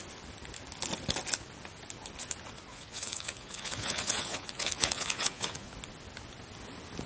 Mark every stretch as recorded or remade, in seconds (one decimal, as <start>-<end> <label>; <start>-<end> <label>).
0.0-2.7 recorded; 2.7-5.7 remade; 5.7-7.1 recorded